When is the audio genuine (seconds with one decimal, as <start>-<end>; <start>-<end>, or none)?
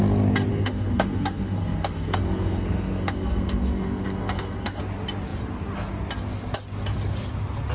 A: 0.0-0.5; 4.8-7.7